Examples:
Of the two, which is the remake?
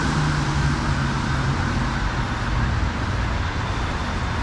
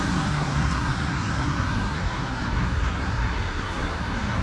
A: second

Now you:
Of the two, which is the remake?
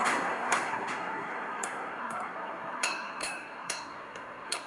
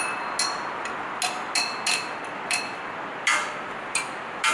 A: first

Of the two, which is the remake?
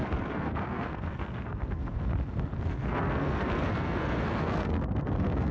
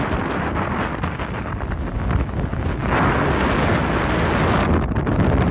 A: first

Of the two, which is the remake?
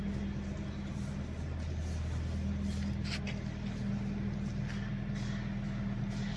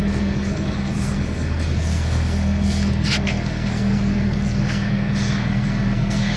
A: second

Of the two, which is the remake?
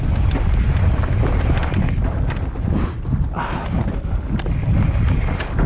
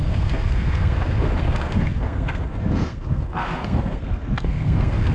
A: second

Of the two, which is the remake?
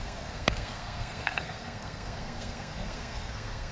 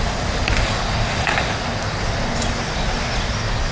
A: first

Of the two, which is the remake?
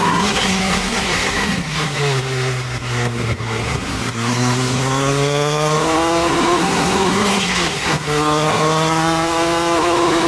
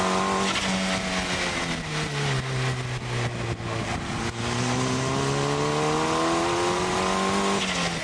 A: first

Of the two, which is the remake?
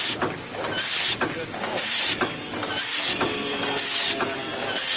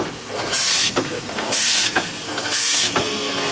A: second